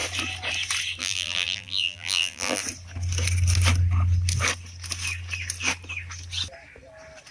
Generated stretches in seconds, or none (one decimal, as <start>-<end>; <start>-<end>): 1.0-2.6